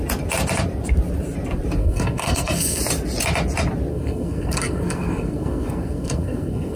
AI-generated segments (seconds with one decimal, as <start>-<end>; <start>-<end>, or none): 1.8-2.8; 3.9-6.8